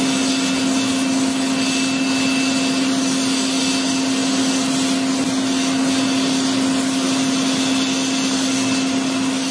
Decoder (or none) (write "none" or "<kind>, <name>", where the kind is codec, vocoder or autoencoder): none